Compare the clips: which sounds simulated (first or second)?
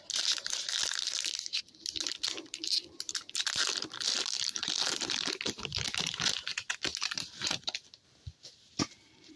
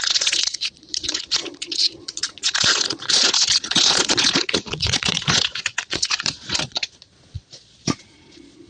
second